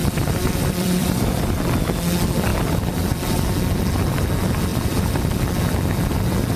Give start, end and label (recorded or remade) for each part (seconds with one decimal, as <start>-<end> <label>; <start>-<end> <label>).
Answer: 0.0-1.5 remade; 1.5-4.7 recorded; 4.7-5.4 remade; 5.4-6.6 recorded